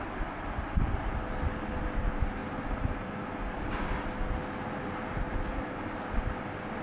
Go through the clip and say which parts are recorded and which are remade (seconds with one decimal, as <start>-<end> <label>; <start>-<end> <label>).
0.0-6.8 recorded